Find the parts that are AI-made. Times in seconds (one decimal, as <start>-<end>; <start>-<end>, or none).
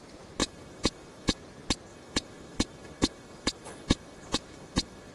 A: 0.4-1.4; 1.9-5.1